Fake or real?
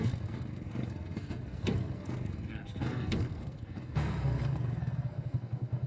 fake